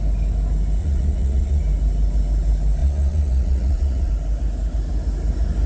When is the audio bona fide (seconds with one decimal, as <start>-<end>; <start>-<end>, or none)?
0.0-0.8; 1.6-2.8; 4.1-5.7